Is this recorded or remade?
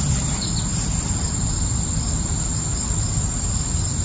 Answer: recorded